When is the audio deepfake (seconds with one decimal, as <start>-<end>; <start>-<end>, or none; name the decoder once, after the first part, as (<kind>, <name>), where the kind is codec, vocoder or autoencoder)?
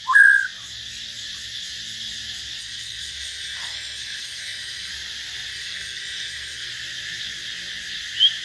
2.6-4.9 (codec, SNAC); 5.5-6.7